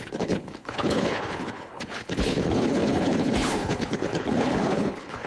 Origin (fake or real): fake